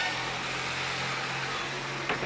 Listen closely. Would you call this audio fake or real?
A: real